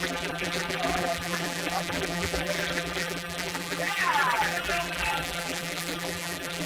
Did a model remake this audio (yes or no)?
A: yes